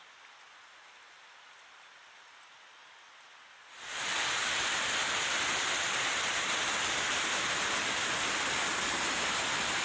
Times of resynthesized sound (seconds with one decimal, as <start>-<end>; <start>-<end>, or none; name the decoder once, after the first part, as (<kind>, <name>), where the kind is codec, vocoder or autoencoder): none